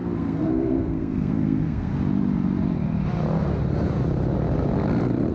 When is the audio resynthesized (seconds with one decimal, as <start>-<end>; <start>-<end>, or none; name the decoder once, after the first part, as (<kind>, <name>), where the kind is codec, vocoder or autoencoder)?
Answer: 0.0-1.9 (codec, SNAC)